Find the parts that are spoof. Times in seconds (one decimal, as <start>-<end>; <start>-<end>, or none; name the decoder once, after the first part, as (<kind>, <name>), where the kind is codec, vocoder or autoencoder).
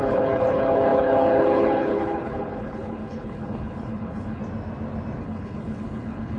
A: 0.0-4.4 (codec, HILCodec); 5.2-6.4